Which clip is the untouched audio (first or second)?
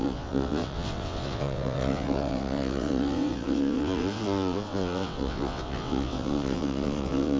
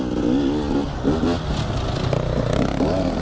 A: second